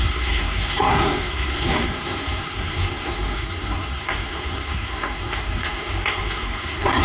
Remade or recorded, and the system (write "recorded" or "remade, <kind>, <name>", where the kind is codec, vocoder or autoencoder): remade, codec, SNAC